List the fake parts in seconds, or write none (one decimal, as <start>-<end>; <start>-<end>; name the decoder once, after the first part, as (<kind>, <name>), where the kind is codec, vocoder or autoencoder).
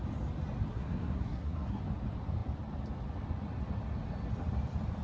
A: 0.7-1.8 (codec, SNAC)